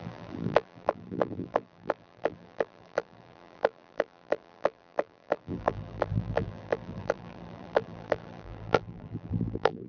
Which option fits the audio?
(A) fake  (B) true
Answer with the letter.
A